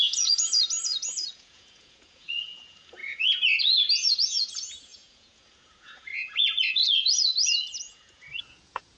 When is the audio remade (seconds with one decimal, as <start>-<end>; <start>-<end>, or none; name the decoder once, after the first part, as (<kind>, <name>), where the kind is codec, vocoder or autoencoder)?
0.0-9.0 (vocoder, Vocos)